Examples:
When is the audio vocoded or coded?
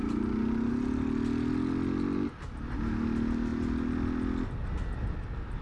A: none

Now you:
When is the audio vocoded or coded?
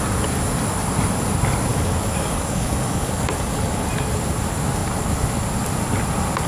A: 1.7-3.9 (codec, DAC)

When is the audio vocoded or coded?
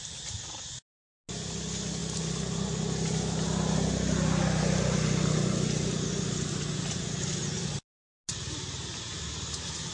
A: none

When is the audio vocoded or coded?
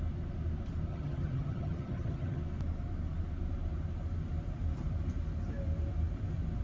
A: 0.9-2.4 (vocoder, HiFi-GAN)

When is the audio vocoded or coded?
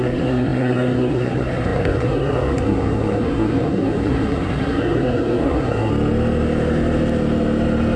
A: 0.0-5.9 (codec, SNAC)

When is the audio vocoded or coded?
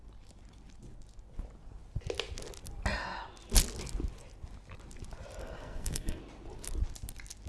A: 5.4-6.2 (codec, SNAC)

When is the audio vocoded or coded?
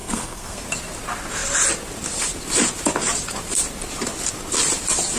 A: 0.0-0.6 (codec, SNAC)